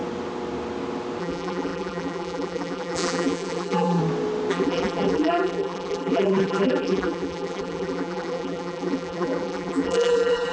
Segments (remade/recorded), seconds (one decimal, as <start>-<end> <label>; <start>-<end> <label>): 0.0-1.2 recorded; 1.2-4.0 remade; 4.0-4.5 recorded; 4.5-10.5 remade